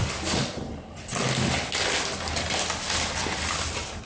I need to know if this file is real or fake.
real